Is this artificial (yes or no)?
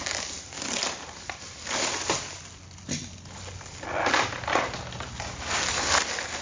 no